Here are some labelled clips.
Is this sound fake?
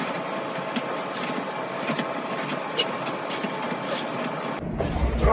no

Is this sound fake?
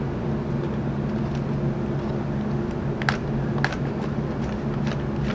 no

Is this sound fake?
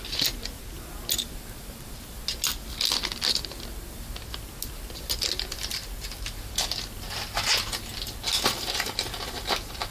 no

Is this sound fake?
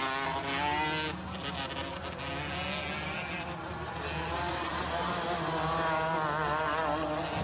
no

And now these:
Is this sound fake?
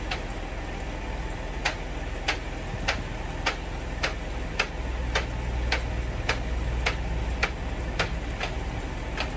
no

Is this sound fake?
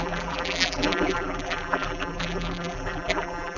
yes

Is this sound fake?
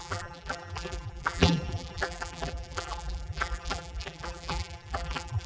yes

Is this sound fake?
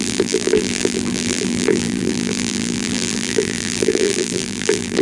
yes